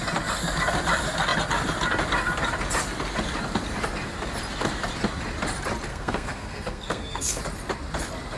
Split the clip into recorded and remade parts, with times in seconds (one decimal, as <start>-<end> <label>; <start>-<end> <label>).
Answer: 0.0-5.9 recorded; 5.9-7.4 remade; 7.4-8.4 recorded